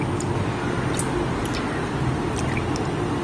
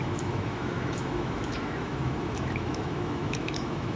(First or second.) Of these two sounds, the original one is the first